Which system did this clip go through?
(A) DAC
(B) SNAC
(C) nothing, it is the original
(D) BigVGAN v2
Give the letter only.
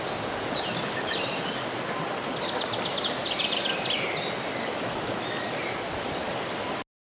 C